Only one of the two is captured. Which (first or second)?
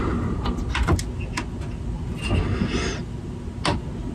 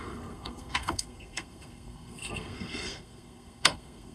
first